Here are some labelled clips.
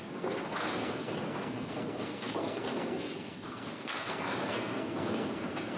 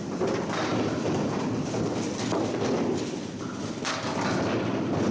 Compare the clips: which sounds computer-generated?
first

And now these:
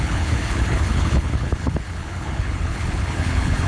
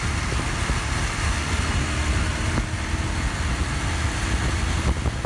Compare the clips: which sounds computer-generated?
first